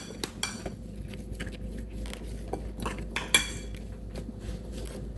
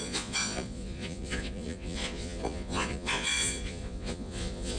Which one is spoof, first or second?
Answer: second